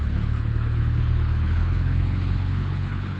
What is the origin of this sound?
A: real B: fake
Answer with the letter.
B